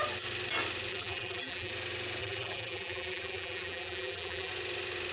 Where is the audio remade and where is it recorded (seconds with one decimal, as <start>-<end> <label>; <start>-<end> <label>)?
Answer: 0.0-0.9 recorded; 0.9-1.7 remade; 1.7-2.2 recorded; 2.2-4.5 remade; 4.5-5.1 recorded